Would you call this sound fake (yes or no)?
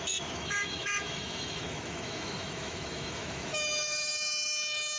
yes